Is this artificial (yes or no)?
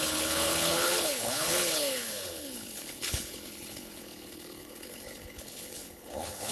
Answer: yes